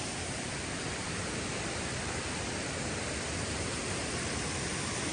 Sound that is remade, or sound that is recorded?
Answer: remade